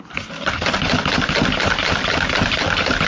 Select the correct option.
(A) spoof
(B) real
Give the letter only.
B